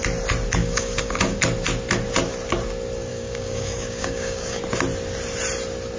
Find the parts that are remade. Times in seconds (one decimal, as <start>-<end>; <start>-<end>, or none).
0.6-1.4; 3.1-4.6